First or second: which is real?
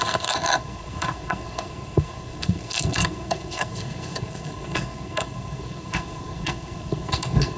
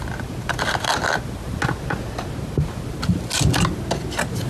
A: second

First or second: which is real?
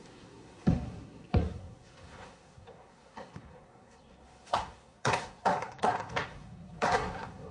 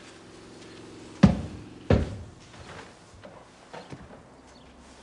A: second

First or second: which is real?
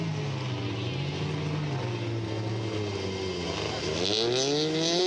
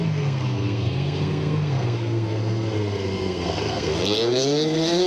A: first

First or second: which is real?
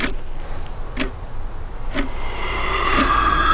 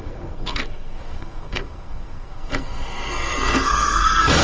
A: first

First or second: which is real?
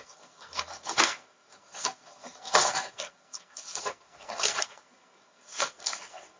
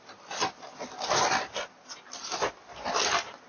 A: second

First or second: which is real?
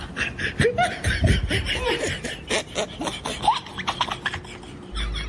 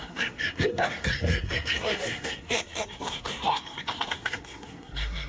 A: first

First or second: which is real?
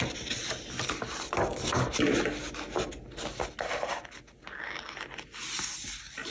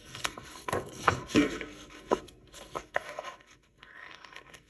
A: first